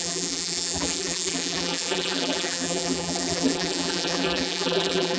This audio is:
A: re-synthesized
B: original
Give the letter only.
A